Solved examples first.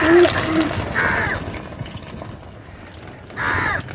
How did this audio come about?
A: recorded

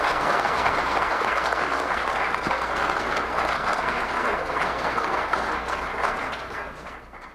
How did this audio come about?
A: remade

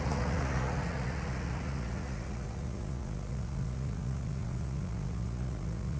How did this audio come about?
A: remade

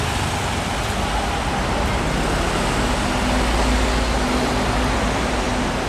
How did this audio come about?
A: recorded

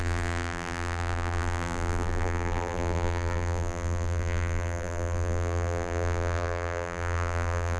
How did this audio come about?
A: remade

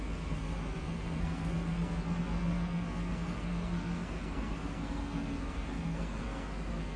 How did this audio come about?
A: remade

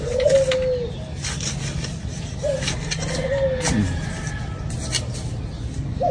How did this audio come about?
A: recorded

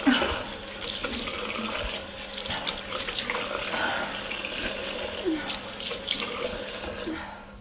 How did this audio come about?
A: recorded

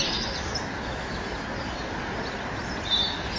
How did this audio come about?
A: recorded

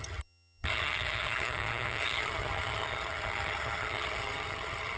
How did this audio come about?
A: remade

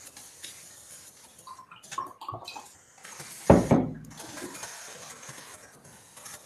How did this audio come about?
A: recorded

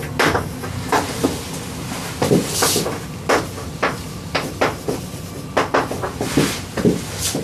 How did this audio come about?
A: recorded